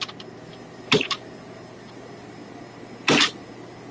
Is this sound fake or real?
real